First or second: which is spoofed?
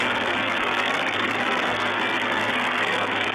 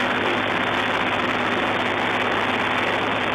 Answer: first